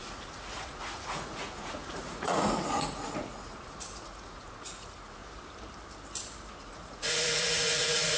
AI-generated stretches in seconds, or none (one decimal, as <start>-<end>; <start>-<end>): 0.0-5.2; 6.6-8.2